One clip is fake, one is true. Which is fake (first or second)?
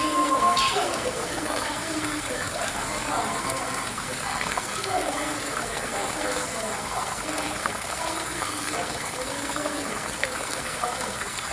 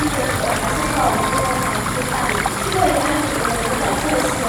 first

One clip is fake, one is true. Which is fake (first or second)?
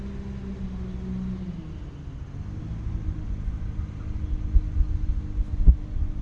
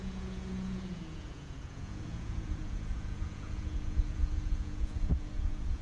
second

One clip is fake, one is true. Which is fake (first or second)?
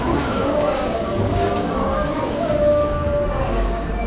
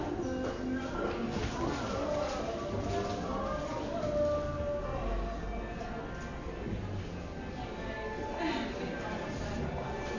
first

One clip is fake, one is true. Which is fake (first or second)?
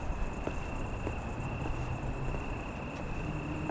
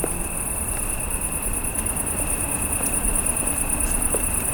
first